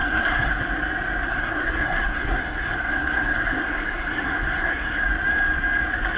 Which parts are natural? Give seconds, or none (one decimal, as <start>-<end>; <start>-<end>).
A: 0.6-1.3; 5.0-6.2